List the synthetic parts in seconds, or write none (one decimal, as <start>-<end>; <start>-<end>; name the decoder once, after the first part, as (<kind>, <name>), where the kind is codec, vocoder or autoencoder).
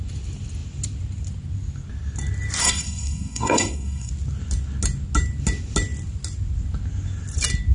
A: 2.6-4.1 (codec, SNAC)